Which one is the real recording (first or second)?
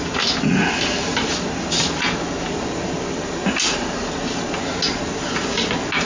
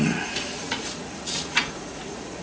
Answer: first